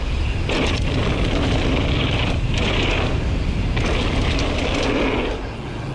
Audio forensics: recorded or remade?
recorded